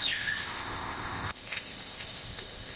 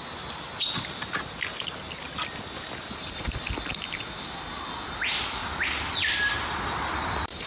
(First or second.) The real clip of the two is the second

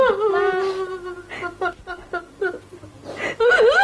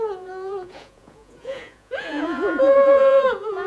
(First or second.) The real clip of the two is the first